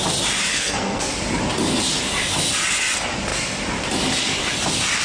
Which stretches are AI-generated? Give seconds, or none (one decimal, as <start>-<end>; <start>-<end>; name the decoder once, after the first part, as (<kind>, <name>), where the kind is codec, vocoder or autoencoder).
0.5-1.1 (codec, SNAC)